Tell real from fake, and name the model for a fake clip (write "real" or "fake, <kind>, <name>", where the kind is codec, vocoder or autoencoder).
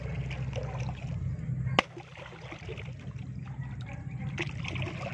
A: real